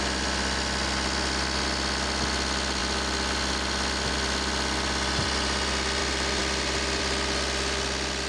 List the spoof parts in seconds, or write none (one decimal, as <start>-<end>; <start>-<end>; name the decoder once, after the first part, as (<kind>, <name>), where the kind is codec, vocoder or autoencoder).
none